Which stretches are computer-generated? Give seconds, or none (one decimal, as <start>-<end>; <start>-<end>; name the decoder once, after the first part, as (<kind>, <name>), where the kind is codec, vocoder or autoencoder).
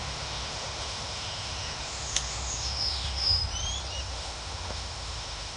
0.0-3.4 (autoencoder, DAC-VAE); 4.0-5.6